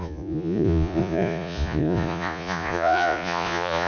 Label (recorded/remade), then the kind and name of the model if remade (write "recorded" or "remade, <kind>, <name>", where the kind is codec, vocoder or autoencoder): remade, vocoder, Vocos